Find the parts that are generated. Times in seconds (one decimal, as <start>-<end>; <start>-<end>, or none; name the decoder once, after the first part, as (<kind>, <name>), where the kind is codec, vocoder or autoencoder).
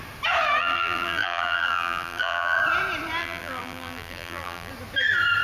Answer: 0.6-2.6 (vocoder, BigVGAN v2); 3.2-4.7